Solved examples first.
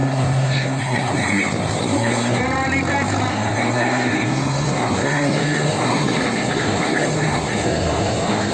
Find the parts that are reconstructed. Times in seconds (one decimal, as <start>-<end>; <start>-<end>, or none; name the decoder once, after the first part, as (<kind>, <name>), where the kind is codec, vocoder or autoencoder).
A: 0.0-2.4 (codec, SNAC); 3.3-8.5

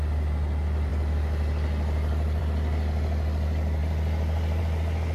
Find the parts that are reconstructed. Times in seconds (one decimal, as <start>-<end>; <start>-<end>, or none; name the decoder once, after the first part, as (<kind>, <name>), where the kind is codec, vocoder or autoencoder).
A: none

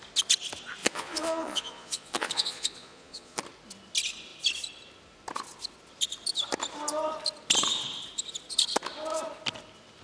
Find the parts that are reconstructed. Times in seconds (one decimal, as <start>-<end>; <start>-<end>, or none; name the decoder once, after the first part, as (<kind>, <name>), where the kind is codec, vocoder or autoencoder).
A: 0.8-3.4 (vocoder, Vocos)

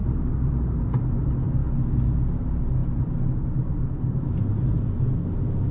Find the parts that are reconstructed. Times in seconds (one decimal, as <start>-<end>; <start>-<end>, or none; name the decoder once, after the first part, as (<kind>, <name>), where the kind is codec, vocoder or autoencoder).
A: 0.0-0.8 (vocoder, BigVGAN v2); 2.8-4.0